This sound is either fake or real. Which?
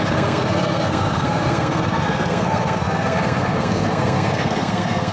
fake